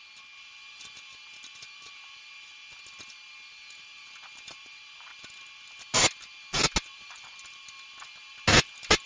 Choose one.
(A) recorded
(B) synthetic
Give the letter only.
A